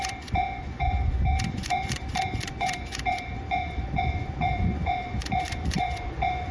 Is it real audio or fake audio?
fake